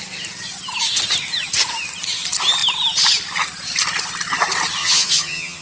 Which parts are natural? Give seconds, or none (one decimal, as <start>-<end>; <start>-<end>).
0.0-4.8